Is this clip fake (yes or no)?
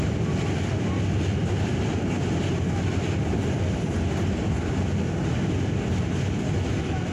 no